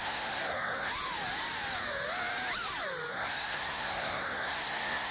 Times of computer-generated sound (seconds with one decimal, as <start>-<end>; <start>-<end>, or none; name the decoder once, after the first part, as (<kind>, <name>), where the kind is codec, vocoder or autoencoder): 0.0-0.9 (codec, SNAC); 3.1-5.1

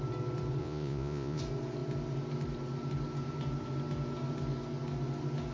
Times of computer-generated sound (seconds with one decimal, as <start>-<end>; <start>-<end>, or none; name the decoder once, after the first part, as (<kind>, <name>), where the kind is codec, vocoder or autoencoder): 0.6-1.4 (vocoder, Vocos)